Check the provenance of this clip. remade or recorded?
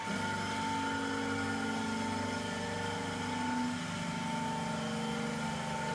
recorded